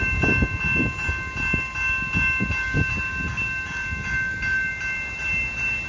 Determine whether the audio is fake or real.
real